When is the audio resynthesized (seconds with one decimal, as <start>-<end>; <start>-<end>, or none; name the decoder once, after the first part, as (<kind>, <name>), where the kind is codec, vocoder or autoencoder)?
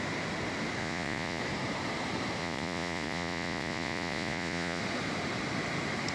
0.8-1.4 (vocoder, Vocos); 2.4-4.8